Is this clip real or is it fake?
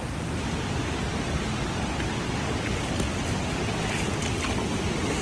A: real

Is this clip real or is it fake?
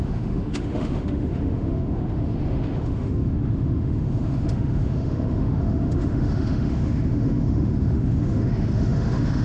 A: fake